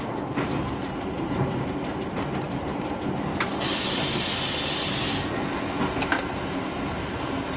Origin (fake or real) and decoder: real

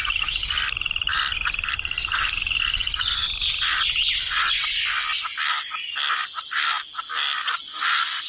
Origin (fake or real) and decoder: real